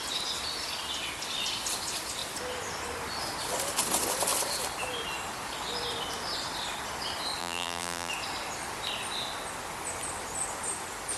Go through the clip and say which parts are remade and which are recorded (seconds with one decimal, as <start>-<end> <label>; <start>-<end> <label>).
0.0-7.4 recorded; 7.4-8.1 remade; 8.1-11.2 recorded